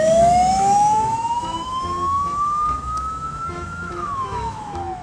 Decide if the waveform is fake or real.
fake